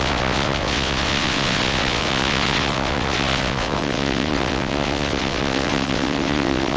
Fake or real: fake